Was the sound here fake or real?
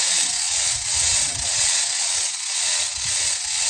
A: fake